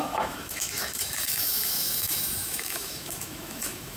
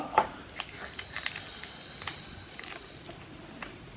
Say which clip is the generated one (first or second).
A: first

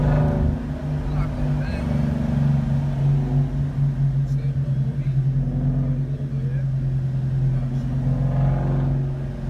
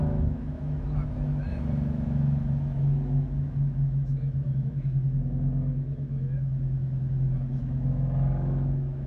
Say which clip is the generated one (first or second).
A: second